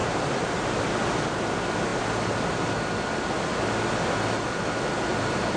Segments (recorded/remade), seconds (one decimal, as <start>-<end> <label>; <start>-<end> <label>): 0.0-0.8 remade; 0.8-5.6 recorded

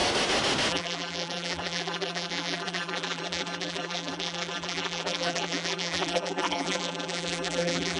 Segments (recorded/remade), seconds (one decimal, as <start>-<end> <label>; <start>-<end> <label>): 0.0-0.7 recorded; 0.7-8.0 remade

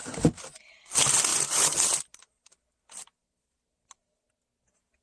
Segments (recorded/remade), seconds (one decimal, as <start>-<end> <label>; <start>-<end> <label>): 0.0-1.3 recorded; 1.3-4.3 remade; 4.3-5.0 recorded

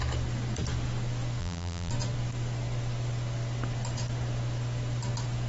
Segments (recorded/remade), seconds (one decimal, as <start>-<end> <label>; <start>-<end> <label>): 0.0-1.4 recorded; 1.4-1.9 remade; 1.9-5.5 recorded